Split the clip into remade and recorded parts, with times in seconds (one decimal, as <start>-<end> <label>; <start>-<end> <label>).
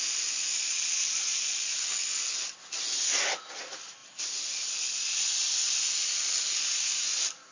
0.0-7.5 recorded